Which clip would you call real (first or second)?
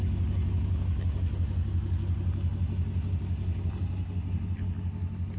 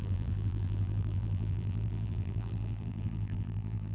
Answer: first